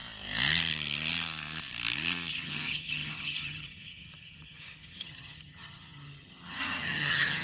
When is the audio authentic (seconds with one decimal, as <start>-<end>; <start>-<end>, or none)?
0.0-2.3